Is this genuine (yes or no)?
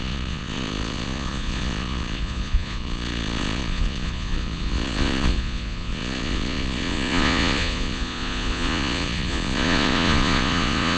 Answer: no